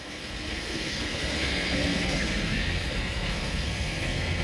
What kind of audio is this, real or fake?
fake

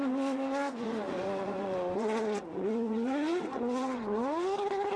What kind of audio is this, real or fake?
fake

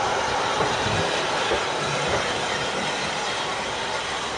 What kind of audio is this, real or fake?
fake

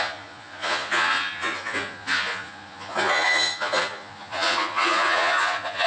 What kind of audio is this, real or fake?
fake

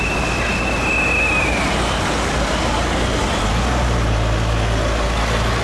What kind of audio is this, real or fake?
real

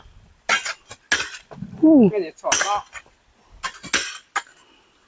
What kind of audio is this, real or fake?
real